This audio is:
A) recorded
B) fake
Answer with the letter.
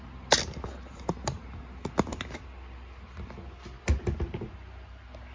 A